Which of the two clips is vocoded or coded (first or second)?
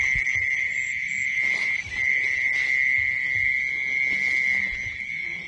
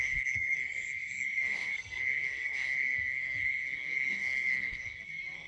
second